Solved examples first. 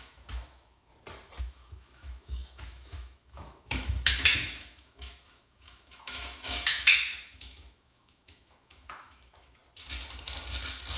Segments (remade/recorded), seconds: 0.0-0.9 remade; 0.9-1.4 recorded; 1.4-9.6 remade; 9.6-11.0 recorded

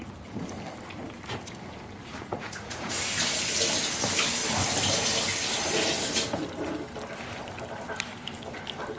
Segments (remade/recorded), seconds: 0.0-2.0 recorded; 2.0-2.9 remade; 2.9-9.0 recorded

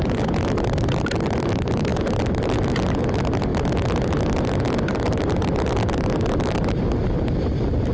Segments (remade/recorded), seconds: 0.0-3.5 remade; 3.5-4.4 recorded; 4.4-7.0 remade; 7.0-7.5 recorded; 7.5-7.9 remade

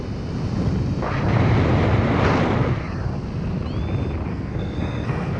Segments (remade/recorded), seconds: 0.0-4.3 recorded; 4.3-5.4 remade

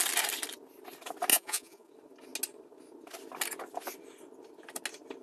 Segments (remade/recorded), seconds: 0.0-1.3 recorded; 1.3-1.9 remade; 1.9-5.2 recorded

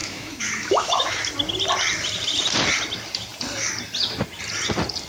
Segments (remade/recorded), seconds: 0.0-1.2 remade; 1.2-5.1 recorded

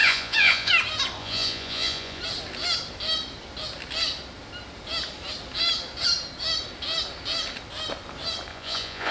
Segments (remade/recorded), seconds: 0.0-0.7 remade; 0.7-1.2 recorded; 1.2-2.2 remade; 2.2-8.5 recorded; 8.5-9.1 remade

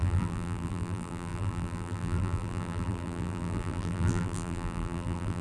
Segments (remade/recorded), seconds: 0.0-5.4 remade